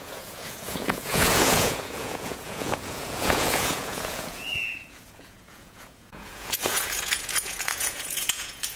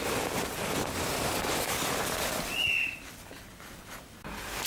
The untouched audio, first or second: second